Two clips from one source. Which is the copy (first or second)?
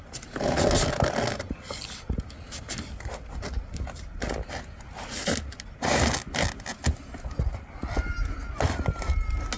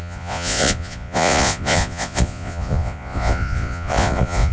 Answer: second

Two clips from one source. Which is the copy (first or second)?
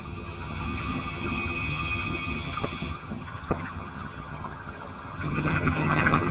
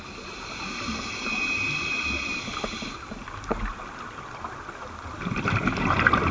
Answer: first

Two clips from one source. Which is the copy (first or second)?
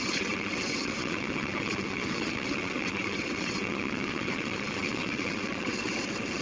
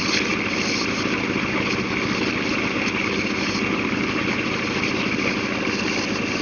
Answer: first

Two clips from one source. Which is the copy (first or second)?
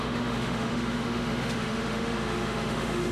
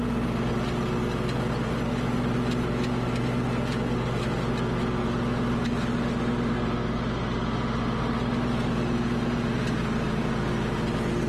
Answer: first